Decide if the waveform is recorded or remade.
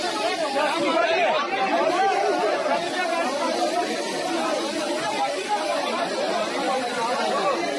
recorded